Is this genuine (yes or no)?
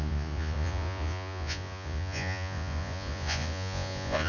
no